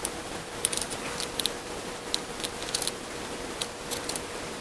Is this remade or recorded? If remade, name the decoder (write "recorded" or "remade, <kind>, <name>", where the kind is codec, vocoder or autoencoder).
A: recorded